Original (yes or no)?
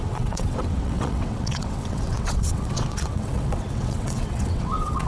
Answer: no